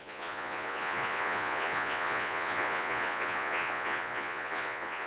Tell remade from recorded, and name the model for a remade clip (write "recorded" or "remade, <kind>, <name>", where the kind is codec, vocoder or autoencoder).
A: remade, vocoder, Vocos